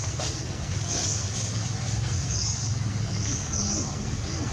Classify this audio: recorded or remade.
remade